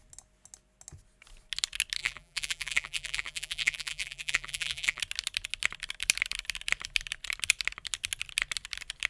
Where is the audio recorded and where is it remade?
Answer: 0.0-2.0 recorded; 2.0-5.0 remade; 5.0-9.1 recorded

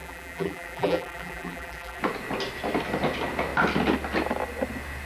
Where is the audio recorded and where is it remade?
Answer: 0.0-2.0 remade; 2.0-5.1 recorded

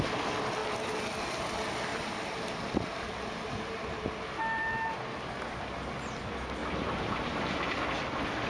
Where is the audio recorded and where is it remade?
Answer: 0.0-1.9 recorded; 1.9-4.0 remade; 4.0-6.6 recorded; 6.6-7.7 remade; 7.7-8.5 recorded

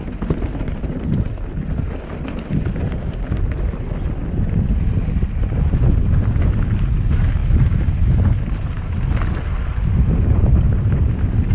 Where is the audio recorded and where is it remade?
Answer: 0.0-11.5 recorded